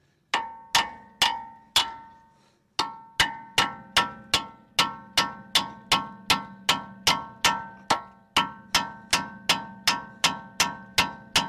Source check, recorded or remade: recorded